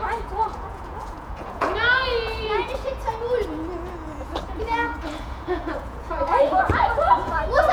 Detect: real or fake fake